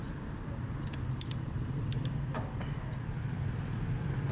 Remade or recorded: recorded